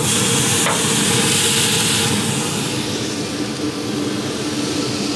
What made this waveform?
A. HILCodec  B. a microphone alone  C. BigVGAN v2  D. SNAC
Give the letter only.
B